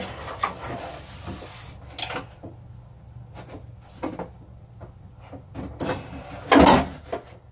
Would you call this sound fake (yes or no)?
no